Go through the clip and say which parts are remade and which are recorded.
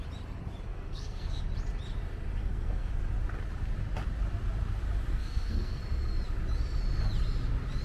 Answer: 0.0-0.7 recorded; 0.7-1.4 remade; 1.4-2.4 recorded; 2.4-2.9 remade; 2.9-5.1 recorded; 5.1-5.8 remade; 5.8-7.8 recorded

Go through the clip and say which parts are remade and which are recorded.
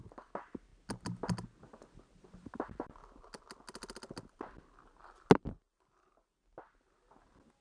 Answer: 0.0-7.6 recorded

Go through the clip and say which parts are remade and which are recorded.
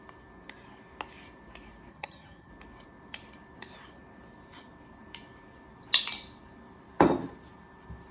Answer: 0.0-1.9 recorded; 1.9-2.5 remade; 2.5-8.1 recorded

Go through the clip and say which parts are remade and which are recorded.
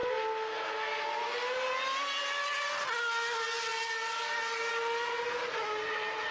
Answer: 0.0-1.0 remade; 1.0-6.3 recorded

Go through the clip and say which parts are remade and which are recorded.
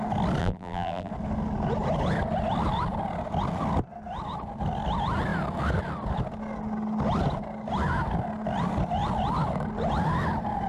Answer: 0.0-0.4 recorded; 0.4-1.1 remade; 1.1-10.7 recorded